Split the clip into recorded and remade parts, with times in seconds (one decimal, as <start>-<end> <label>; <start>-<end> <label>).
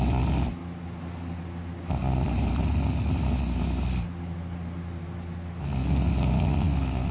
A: 0.0-7.1 recorded